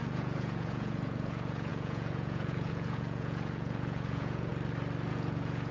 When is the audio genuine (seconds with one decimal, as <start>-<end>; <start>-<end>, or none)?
4.5-5.1